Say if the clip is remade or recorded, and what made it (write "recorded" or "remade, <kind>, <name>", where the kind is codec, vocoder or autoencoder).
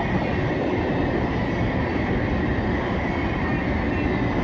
recorded